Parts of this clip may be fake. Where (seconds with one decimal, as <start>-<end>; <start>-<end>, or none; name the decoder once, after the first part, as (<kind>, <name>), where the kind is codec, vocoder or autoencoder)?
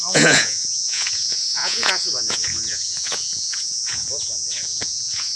0.0-5.4 (vocoder, Vocos)